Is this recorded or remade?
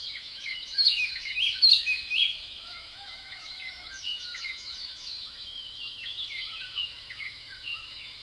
remade